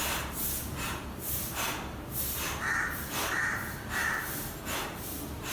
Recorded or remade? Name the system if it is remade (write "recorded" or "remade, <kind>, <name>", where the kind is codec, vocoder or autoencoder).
remade, vocoder, BigVGAN v2